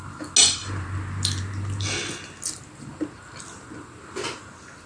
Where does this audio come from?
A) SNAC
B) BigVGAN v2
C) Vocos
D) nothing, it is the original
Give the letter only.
D